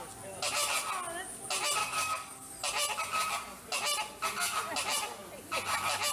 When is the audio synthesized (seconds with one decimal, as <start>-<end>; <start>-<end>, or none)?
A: 1.8-2.5